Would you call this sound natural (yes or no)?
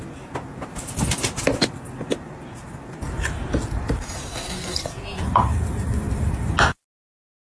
yes